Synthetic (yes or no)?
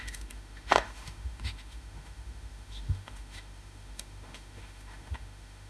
yes